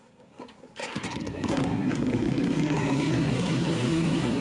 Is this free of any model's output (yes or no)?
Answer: no